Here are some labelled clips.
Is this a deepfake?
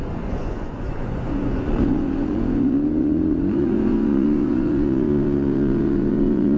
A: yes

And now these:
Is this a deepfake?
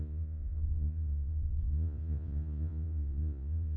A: yes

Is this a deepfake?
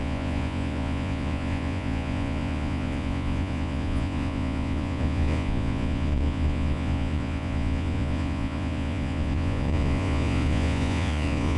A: yes